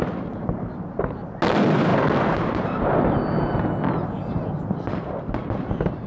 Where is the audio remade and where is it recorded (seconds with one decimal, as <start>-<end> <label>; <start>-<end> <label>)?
0.0-6.1 recorded